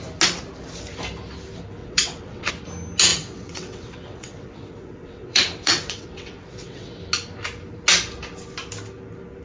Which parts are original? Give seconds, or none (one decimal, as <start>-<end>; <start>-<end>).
0.0-1.8; 2.5-3.1; 7.0-9.4